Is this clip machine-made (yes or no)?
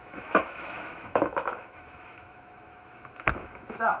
yes